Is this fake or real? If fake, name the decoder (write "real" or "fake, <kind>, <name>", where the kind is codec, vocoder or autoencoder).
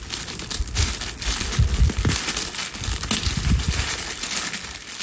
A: real